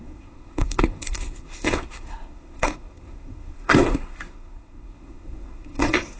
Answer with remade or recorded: remade